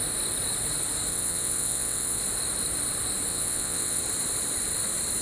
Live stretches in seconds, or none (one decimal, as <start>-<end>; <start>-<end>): 0.0-1.1; 2.2-3.3; 4.0-5.2